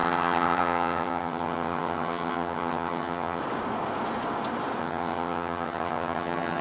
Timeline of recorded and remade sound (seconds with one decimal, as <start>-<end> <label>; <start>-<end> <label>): 0.0-3.4 remade; 3.4-4.8 recorded; 4.8-6.6 remade